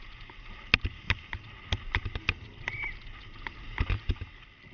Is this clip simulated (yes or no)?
no